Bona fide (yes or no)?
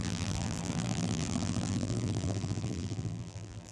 no